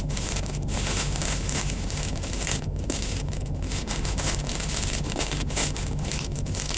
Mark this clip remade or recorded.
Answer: remade